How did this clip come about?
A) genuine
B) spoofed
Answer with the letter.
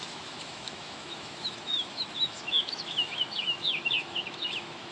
B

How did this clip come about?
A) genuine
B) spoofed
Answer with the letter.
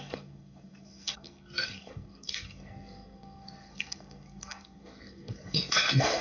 B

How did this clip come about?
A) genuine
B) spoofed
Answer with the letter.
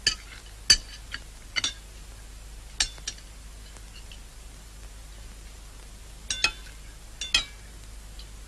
A